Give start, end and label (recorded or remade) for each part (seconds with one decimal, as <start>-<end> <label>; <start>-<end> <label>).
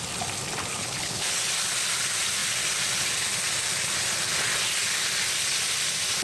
0.0-0.7 recorded; 0.7-1.4 remade; 1.4-6.2 recorded